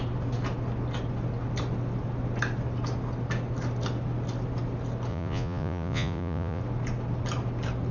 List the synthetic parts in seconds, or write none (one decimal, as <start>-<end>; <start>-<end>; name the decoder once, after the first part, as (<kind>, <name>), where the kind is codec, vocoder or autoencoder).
5.1-6.6 (vocoder, Vocos)